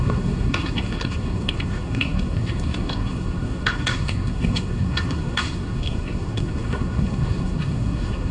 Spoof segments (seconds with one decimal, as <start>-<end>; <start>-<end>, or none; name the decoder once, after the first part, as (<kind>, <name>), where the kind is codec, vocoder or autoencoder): 0.0-8.3 (codec, SNAC)